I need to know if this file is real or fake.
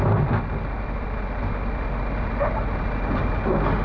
real